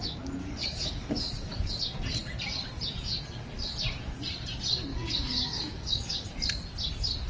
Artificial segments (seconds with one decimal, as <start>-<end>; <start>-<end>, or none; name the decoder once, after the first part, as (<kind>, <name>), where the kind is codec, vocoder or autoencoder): 0.4-1.7 (codec, DAC); 4.9-6.3

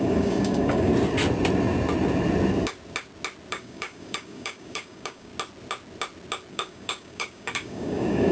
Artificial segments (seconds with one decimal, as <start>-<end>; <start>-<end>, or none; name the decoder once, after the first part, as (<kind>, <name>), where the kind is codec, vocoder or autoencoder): 0.0-0.9 (codec, DAC); 3.5-5.3; 6.5-8.3

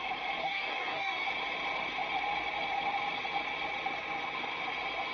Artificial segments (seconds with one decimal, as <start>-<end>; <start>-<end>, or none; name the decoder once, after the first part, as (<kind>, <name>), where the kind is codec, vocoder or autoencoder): 0.4-1.3 (codec, DAC)

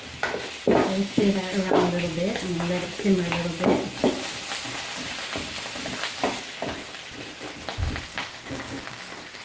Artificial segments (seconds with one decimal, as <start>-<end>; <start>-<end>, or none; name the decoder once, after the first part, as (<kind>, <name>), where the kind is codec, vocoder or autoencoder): 0.8-1.9 (codec, DAC); 8.1-9.4